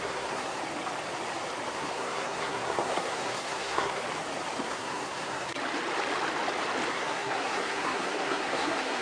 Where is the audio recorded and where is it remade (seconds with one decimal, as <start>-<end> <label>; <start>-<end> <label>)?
0.0-0.6 remade; 0.6-1.7 recorded; 1.7-4.0 remade; 4.0-4.6 recorded; 4.6-5.6 remade; 5.6-6.9 recorded; 6.9-9.0 remade